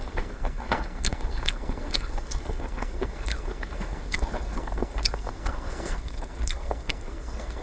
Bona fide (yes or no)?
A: no